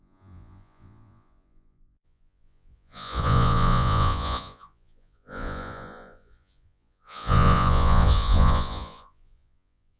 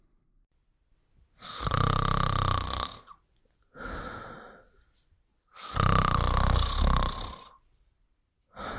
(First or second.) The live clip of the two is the second